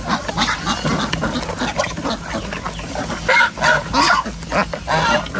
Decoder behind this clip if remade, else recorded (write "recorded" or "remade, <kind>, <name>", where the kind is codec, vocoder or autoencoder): recorded